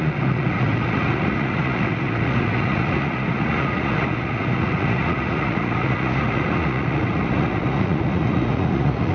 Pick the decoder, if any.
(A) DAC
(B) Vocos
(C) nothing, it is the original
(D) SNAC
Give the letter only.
B